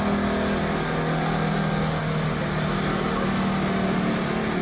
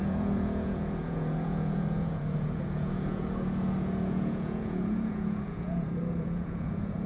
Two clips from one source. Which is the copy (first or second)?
second